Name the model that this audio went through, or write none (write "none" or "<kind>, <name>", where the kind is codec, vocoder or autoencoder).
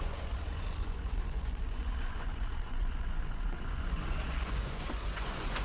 vocoder, Vocos